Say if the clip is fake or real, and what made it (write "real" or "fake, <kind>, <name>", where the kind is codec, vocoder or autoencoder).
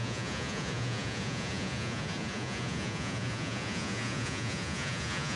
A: fake, vocoder, Vocos